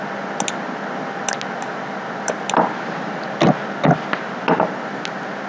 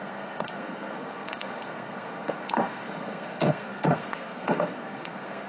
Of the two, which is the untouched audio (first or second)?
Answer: first